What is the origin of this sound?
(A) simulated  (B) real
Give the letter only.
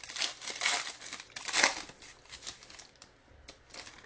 B